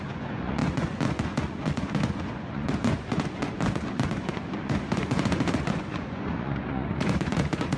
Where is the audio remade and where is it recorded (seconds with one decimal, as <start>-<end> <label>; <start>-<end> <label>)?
0.0-7.8 remade

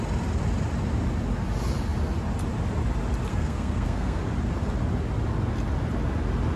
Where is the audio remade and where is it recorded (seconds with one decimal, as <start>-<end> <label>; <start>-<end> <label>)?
0.0-3.3 recorded; 3.3-4.2 remade; 4.2-6.6 recorded